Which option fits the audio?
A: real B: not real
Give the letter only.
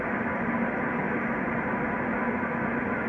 A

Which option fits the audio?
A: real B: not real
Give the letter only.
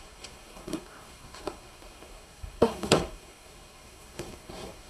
B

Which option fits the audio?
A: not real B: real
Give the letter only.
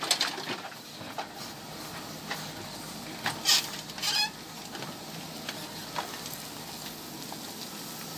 B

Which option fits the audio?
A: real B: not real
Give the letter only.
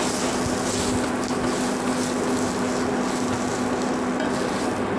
A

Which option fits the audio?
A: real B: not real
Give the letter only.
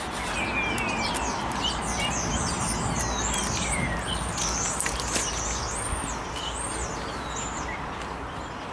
A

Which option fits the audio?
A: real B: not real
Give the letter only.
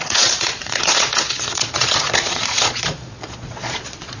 B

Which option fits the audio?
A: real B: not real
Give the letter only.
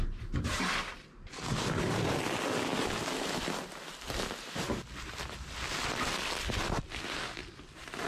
A